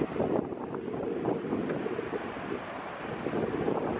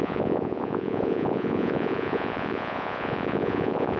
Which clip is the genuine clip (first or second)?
first